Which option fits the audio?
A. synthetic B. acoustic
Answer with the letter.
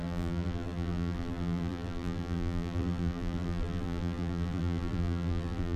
A